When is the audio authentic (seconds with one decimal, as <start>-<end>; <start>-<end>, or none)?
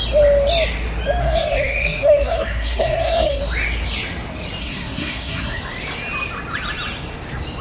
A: 0.0-1.2; 3.4-4.6; 5.6-7.6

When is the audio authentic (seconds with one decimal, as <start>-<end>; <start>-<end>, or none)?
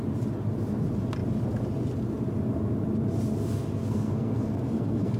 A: 0.0-3.8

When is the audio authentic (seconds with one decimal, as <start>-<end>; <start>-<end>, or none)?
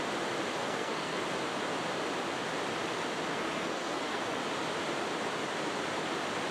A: 0.0-0.6; 1.2-3.3; 4.4-6.5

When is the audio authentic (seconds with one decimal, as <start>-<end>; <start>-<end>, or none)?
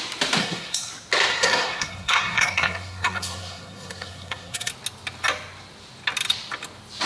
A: 0.0-0.4; 0.9-1.3; 4.7-7.1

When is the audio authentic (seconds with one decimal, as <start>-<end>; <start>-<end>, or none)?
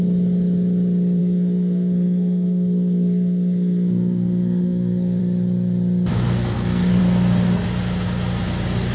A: 0.0-1.2; 5.2-6.1; 7.0-8.9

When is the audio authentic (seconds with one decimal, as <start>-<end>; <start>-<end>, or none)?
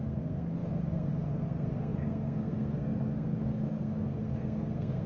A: none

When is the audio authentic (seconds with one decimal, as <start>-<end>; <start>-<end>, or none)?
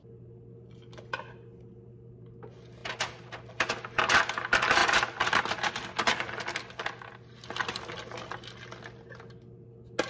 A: 0.0-10.1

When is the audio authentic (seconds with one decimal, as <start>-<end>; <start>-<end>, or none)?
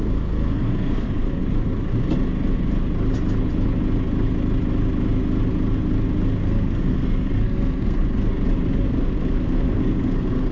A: 1.4-6.4; 8.0-8.7